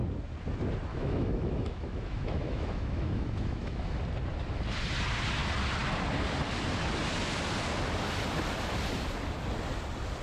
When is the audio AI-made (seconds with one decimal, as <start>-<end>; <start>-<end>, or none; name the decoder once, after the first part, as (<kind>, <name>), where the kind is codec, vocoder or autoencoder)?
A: 0.9-4.0 (autoencoder, DAC-VAE)